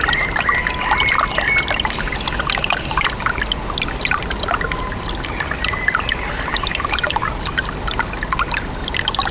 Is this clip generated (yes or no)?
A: no